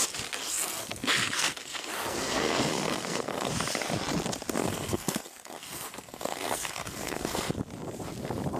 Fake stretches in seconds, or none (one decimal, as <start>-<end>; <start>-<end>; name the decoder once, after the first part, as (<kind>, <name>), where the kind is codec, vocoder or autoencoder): 0.4-3.5 (codec, SNAC); 4.6-7.5